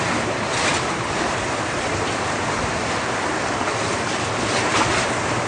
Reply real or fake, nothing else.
real